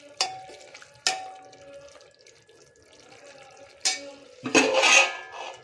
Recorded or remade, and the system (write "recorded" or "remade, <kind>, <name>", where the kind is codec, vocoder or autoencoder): recorded